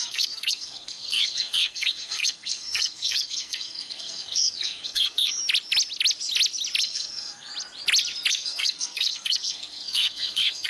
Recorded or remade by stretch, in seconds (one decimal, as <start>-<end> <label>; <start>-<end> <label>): 0.0-5.4 remade; 5.4-6.8 recorded; 6.8-7.5 remade; 7.5-8.3 recorded; 8.3-10.7 remade